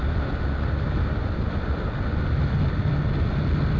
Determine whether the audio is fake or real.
real